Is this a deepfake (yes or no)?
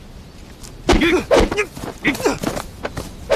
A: no